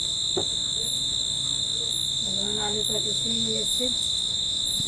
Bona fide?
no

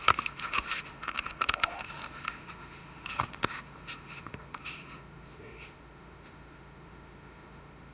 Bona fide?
no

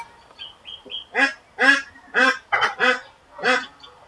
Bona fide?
yes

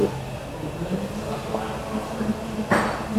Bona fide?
yes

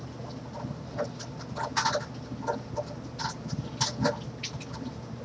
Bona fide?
yes